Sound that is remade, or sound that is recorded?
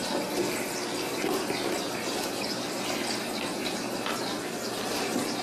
recorded